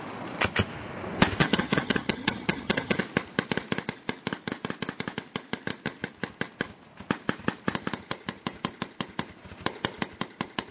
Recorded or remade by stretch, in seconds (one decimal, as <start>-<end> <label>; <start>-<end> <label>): 0.0-1.4 recorded; 1.4-3.0 remade; 3.0-10.7 recorded